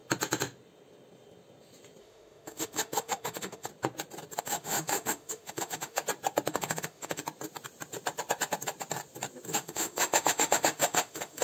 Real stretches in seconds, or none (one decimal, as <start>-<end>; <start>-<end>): 0.0-2.0; 3.7-4.4; 6.0-6.5; 7.2-9.5